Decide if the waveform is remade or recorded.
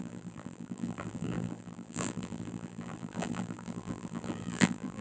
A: remade